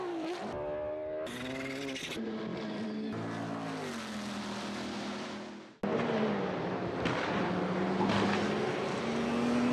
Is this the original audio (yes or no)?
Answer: yes